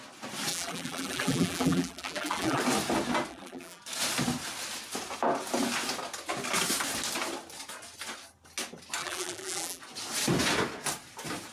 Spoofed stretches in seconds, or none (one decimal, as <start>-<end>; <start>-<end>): 0.5-2.6; 3.3-3.8; 9.0-9.8